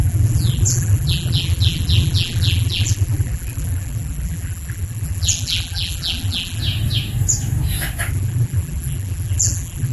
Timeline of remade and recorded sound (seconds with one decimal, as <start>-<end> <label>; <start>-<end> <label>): 0.0-6.6 remade; 6.6-8.1 recorded; 8.1-9.9 remade